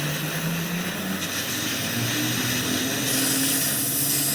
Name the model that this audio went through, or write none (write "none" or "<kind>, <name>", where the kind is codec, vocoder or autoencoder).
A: none